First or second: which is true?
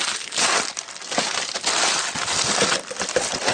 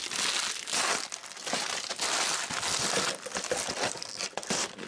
second